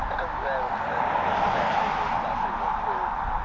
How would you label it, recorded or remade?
recorded